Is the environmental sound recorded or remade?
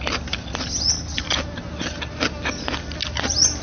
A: recorded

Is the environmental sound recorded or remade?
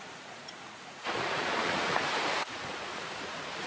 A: remade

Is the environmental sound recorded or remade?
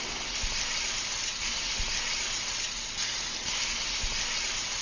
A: recorded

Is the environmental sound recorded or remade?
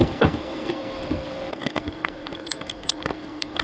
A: remade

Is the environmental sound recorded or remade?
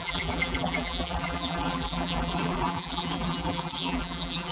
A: remade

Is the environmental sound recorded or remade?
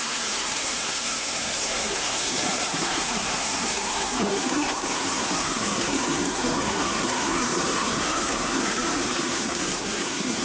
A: remade